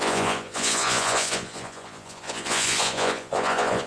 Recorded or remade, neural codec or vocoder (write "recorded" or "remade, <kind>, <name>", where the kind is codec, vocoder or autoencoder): remade, vocoder, Vocos